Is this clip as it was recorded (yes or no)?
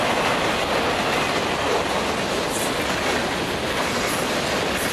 yes